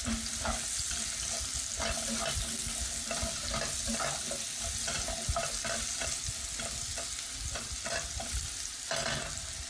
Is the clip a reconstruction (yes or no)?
no